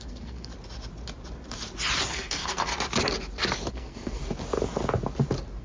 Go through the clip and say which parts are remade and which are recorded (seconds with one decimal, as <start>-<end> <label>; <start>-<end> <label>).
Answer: 0.0-0.5 remade; 0.5-2.1 recorded; 2.1-2.7 remade; 2.7-3.7 recorded; 3.7-4.2 remade; 4.2-5.6 recorded